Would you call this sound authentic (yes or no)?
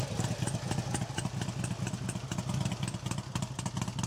yes